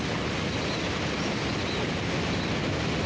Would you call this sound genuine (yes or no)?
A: yes